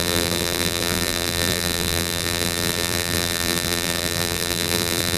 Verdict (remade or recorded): remade